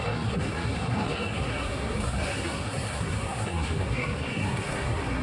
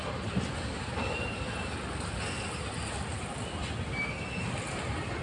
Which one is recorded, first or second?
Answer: second